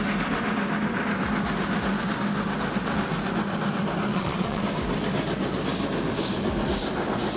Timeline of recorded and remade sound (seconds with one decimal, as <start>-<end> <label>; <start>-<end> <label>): 0.0-4.1 recorded; 4.1-4.6 remade; 4.6-7.4 recorded